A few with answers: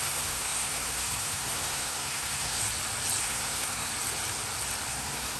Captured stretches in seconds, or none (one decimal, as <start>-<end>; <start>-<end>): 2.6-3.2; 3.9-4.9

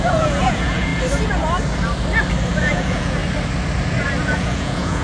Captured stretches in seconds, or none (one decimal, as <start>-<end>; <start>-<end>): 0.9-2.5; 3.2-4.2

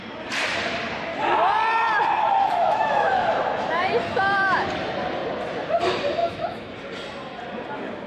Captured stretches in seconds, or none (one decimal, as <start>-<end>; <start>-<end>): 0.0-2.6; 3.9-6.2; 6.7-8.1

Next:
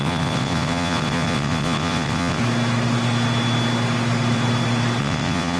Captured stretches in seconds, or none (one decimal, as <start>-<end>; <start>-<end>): 2.4-5.0